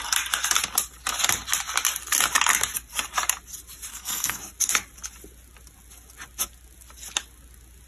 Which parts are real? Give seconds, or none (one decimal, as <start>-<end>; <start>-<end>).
0.0-3.9; 4.4-7.9